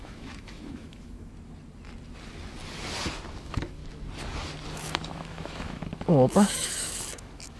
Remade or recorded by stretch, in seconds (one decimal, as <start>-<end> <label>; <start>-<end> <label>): 0.0-1.3 remade; 1.3-3.4 recorded; 3.4-3.8 remade; 3.8-4.7 recorded; 4.7-7.6 remade